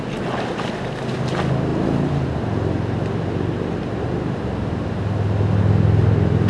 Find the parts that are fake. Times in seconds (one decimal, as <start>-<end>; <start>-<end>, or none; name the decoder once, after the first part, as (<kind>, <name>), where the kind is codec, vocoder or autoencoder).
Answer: none